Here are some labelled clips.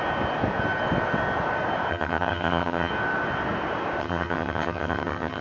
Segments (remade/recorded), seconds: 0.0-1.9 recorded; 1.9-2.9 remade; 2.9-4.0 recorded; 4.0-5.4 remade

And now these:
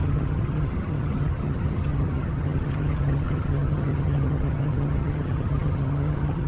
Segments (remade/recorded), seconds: 0.0-6.5 remade

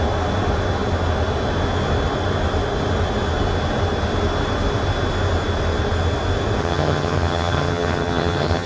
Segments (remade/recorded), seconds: 0.0-6.6 recorded; 6.6-8.7 remade

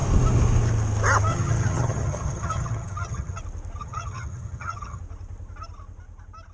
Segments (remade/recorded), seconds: 0.0-1.3 recorded; 1.3-3.4 remade; 3.4-3.8 recorded; 3.8-5.0 remade; 5.0-6.5 recorded

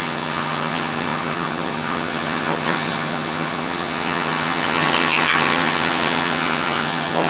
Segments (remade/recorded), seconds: 0.0-7.3 remade